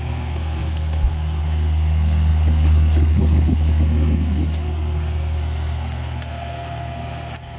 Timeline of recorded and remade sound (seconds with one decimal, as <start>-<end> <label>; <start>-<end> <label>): 0.0-7.6 remade